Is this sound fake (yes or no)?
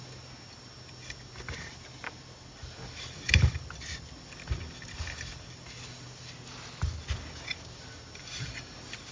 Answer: no